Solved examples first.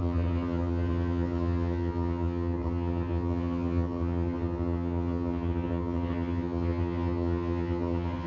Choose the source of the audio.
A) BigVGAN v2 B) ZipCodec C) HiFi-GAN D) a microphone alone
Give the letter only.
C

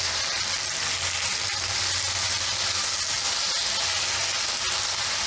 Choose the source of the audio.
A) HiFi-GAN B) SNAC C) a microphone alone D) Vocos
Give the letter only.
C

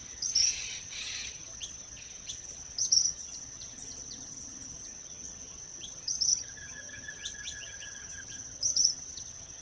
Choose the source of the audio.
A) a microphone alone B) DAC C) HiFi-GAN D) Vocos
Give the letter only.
C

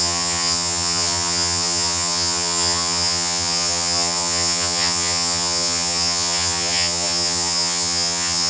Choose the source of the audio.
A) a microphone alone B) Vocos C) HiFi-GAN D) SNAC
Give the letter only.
C